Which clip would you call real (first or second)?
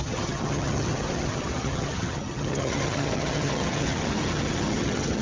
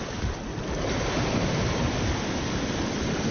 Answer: second